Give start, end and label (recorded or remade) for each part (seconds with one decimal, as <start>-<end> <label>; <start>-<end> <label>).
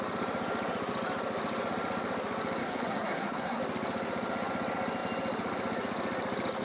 0.0-2.6 recorded; 2.6-3.6 remade; 3.6-6.6 recorded